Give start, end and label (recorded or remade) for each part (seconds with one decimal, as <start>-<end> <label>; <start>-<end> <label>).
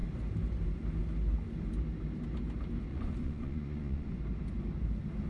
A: 0.0-2.9 recorded; 2.9-4.2 remade; 4.2-5.3 recorded